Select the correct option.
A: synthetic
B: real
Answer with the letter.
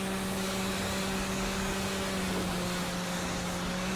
A